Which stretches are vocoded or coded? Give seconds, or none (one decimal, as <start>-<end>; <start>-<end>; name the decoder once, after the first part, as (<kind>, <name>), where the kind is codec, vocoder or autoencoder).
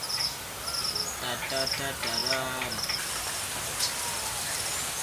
none